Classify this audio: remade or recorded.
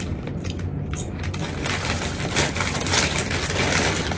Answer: recorded